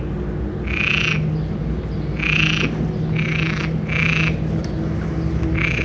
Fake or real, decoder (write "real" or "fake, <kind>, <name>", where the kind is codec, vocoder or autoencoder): real